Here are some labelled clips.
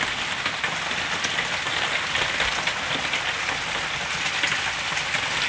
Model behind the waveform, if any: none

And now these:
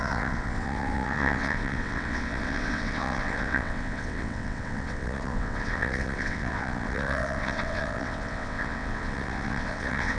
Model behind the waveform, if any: vocoder, WaveNeXt